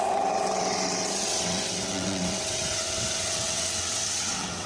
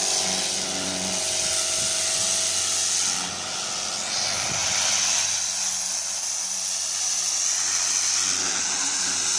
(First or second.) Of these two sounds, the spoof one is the first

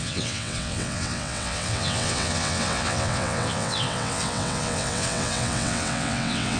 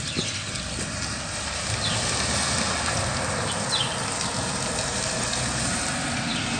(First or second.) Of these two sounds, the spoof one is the first